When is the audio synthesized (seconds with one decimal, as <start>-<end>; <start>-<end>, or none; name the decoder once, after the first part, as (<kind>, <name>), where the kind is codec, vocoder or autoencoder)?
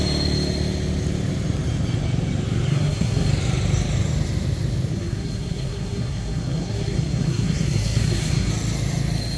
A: 2.7-3.3 (codec, SNAC); 4.9-8.5